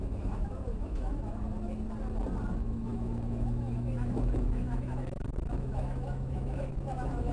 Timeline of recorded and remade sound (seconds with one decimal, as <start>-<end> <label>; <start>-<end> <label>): 0.0-1.5 remade; 1.5-2.5 recorded; 2.5-7.3 remade